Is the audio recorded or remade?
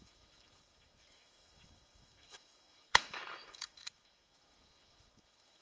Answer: remade